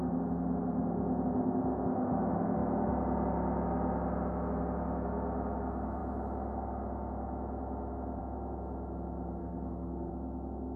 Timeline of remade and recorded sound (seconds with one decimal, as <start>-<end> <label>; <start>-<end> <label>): 0.0-9.4 recorded; 9.4-10.1 remade; 10.1-10.8 recorded